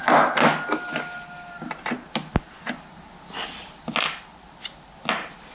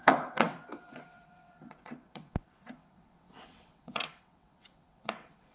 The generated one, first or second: second